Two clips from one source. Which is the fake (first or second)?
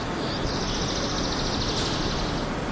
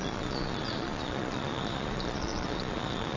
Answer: second